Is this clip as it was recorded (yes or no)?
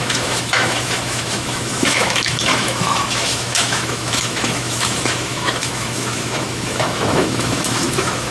no